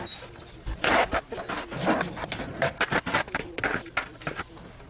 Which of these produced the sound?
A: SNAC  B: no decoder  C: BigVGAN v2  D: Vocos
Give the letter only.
B